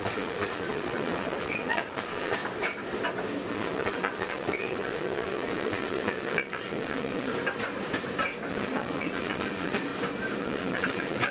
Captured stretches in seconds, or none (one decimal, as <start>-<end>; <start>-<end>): 2.4-3.5; 7.3-8.5; 9.9-10.4